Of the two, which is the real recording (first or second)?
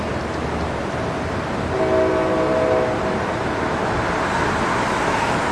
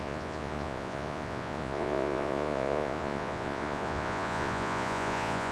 first